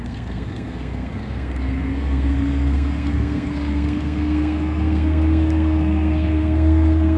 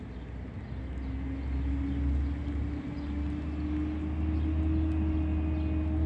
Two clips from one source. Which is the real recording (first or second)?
second